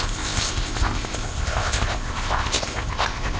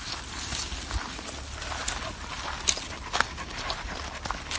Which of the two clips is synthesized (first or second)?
first